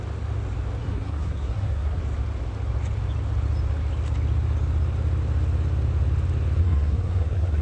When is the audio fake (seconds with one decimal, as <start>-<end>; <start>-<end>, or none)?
0.8-2.0; 6.6-7.6